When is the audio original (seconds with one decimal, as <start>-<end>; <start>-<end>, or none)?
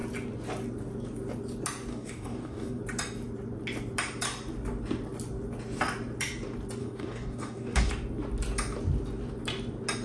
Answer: 0.0-1.9; 2.8-6.8; 7.9-10.0